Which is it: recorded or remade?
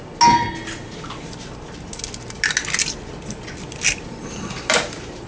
recorded